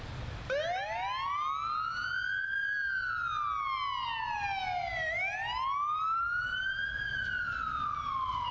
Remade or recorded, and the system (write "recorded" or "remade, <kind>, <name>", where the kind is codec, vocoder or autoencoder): recorded